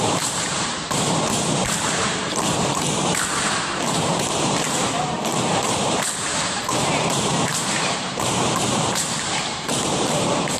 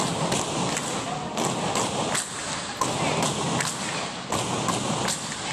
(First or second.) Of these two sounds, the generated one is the first